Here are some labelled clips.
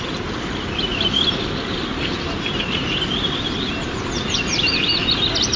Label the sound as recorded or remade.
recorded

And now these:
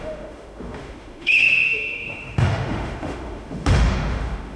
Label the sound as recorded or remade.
remade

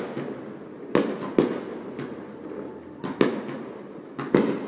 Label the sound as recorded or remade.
recorded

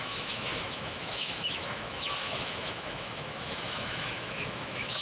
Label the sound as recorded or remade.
remade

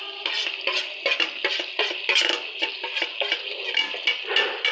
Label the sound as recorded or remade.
recorded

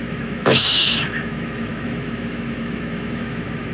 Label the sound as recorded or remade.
remade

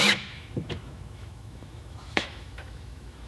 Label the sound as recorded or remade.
remade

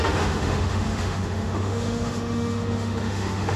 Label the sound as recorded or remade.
remade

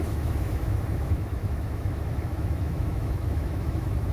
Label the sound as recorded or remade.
remade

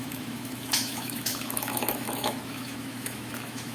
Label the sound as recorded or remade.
remade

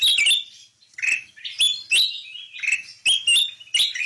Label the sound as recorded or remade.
recorded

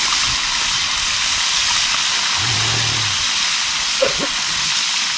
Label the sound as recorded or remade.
recorded